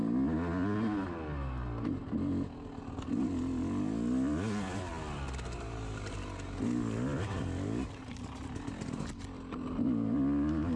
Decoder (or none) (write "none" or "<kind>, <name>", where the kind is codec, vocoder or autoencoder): none